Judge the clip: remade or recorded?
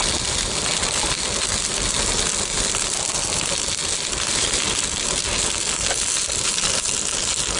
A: recorded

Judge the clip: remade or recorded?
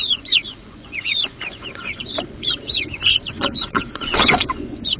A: remade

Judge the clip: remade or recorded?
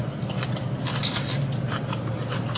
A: recorded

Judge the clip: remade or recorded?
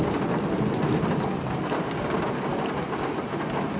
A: recorded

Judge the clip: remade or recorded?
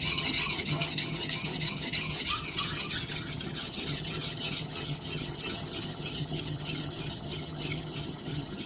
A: remade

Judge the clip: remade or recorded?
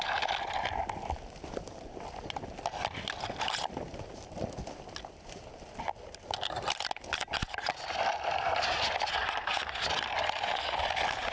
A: recorded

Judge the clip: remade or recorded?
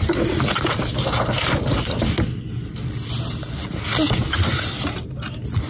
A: recorded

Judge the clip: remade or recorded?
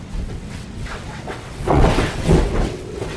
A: remade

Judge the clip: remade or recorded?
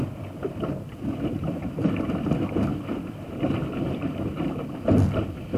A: remade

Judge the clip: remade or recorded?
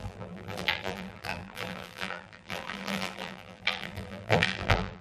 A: remade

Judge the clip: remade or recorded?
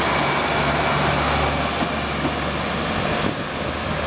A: recorded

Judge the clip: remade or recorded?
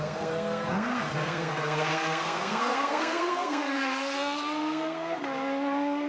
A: remade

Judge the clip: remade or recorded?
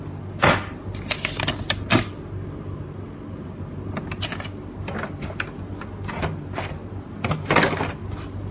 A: recorded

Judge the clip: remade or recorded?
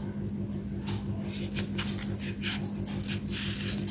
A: recorded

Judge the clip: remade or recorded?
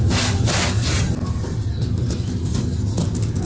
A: recorded